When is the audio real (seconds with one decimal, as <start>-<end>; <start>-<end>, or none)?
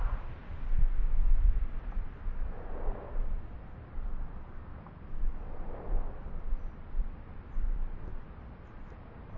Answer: 0.0-9.4